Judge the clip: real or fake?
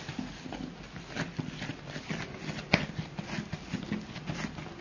real